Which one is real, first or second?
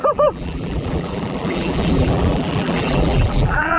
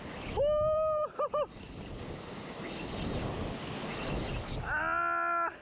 second